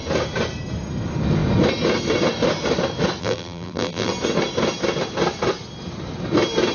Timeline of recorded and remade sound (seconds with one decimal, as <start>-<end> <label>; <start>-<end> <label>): 0.0-3.2 recorded; 3.2-4.1 remade; 4.1-6.7 recorded